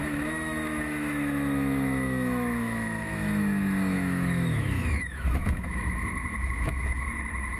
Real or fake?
fake